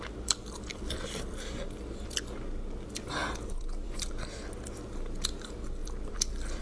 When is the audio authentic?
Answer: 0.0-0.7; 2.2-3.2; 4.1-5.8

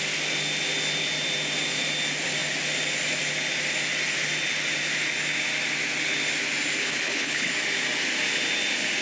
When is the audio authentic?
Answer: 0.0-6.8; 7.5-9.0

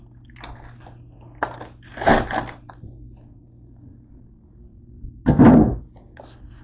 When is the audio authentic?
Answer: 0.0-6.6

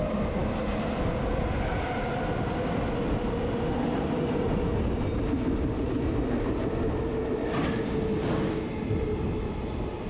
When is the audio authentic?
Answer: 0.0-10.1